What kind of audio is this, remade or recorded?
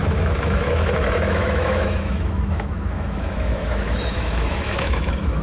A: remade